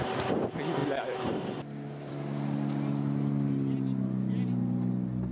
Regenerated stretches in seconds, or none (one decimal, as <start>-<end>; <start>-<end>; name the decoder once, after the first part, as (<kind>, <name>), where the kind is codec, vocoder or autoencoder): none